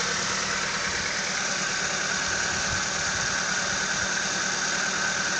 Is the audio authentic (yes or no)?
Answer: yes